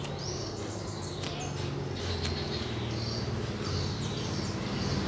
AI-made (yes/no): no